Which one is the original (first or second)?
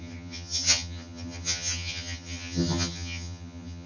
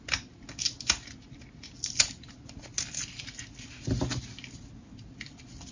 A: second